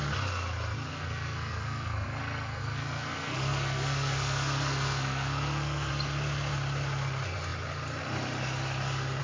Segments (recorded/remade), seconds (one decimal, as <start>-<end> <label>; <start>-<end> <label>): 0.0-0.9 recorded; 0.9-5.9 remade; 5.9-9.2 recorded